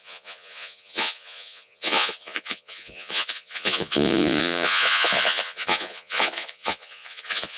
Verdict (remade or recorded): remade